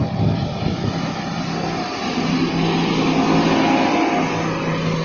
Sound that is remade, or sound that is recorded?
recorded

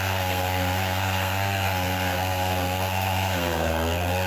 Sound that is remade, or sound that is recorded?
remade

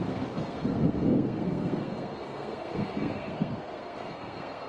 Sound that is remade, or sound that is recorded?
remade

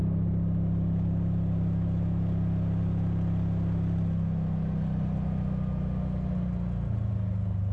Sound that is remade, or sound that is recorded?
recorded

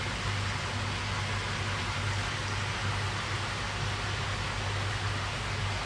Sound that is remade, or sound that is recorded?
recorded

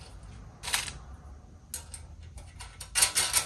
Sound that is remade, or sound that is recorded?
recorded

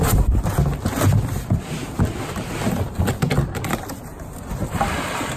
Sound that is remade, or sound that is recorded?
recorded